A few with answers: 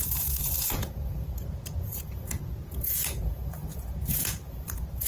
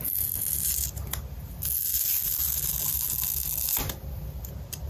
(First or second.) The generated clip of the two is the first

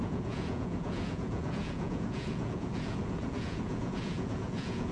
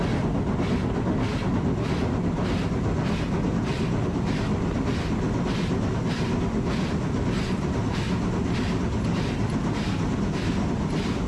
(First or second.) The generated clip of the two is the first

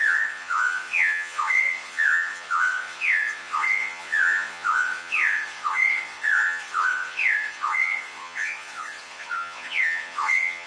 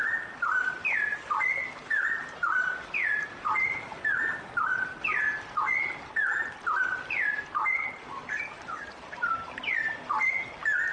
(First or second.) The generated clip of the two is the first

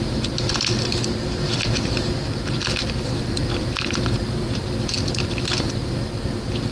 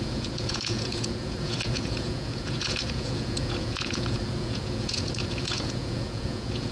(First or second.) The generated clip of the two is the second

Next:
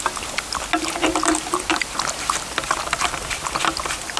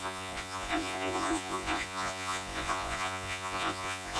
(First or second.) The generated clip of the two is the second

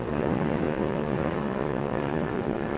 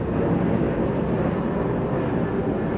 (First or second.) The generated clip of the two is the first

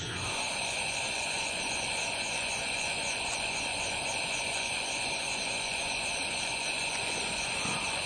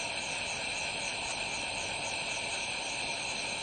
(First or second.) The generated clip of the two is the first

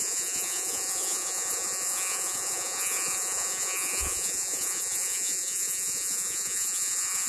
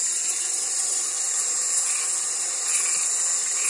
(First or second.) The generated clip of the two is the first